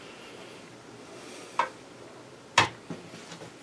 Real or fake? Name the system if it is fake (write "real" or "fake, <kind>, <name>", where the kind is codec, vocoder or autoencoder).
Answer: real